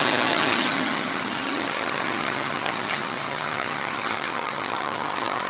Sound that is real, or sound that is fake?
fake